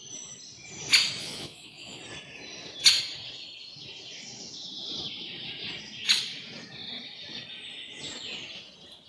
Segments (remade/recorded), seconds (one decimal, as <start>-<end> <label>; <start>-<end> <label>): 0.0-1.2 recorded; 1.2-2.0 remade; 2.0-9.1 recorded